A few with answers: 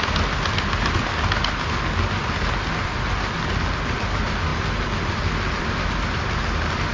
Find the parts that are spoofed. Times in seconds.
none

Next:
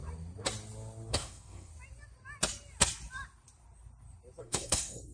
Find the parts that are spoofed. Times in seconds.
1.1-1.7 (codec, SNAC); 4.4-5.1

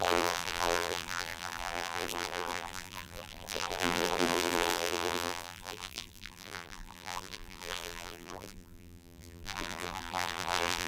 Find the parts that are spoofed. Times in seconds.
0.0-10.9 (vocoder, BigVGAN v2)

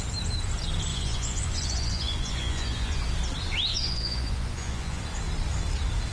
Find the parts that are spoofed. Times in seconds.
0.9-3.0 (vocoder, Vocos); 3.7-5.0

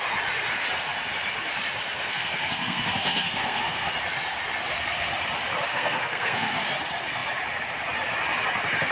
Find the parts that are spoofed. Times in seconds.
1.9-3.9 (codec, SNAC); 5.7-6.6